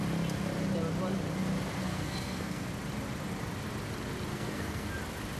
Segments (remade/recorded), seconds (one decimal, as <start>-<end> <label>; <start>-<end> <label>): 0.0-1.8 recorded; 1.8-2.7 remade; 2.7-4.3 recorded; 4.3-4.9 remade; 4.9-5.4 recorded